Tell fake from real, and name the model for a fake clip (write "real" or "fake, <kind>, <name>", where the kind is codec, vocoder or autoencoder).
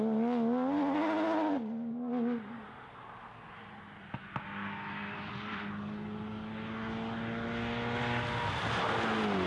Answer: real